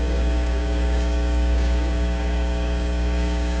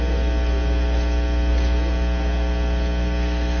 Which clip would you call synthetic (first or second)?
first